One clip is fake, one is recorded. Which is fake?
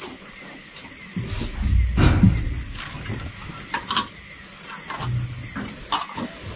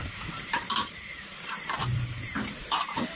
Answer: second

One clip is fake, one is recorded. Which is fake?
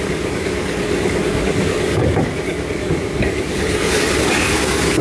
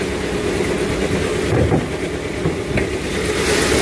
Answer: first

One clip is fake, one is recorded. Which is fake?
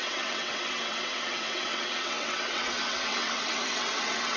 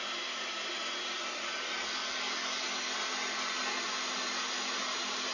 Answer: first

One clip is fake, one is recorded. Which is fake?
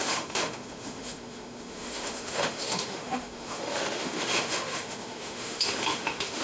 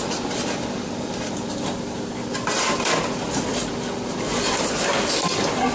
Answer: first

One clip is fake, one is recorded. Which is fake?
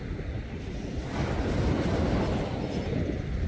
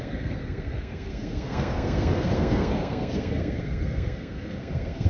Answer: second